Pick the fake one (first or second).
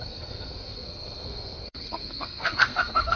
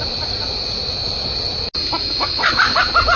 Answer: first